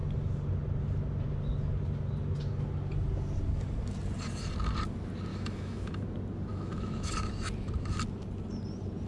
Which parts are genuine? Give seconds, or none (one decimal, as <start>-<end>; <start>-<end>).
0.0-5.3; 5.9-6.5; 7.1-9.1